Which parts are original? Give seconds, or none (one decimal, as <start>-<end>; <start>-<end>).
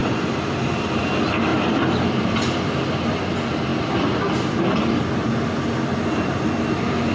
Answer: 1.0-7.1